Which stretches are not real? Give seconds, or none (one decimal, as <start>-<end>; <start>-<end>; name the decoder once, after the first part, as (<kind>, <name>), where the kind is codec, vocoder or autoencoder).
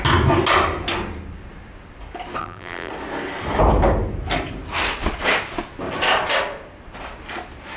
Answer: 2.4-2.9 (vocoder, BigVGAN v2)